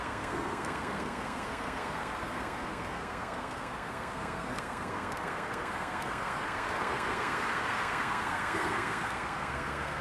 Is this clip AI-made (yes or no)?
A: yes